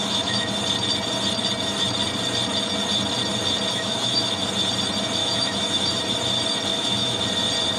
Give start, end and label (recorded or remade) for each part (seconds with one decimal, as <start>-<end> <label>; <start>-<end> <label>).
0.0-0.6 remade; 0.6-3.7 recorded; 3.7-4.3 remade; 4.3-5.2 recorded; 5.2-6.0 remade; 6.0-6.7 recorded; 6.7-7.2 remade; 7.2-7.8 recorded